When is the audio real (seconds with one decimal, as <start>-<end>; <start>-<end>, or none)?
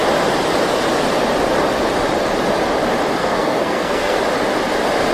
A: 0.0-3.2; 4.2-5.1